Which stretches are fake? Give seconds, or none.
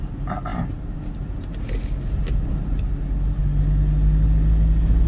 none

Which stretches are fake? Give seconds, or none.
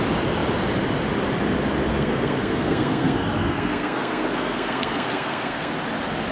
1.9-5.7 (codec, SNAC)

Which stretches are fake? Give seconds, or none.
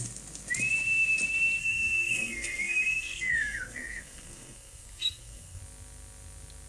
1.6-5.6 (codec, SNAC)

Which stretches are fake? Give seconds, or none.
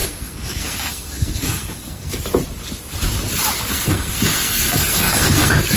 0.0-2.2 (codec, SNAC); 3.7-5.8